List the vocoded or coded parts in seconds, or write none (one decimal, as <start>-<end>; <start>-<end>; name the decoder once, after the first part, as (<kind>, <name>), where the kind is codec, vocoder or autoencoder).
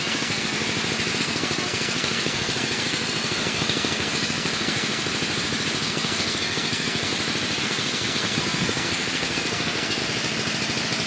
0.0-0.6 (codec, SNAC); 1.2-5.1; 5.7-7.1; 7.6-10.0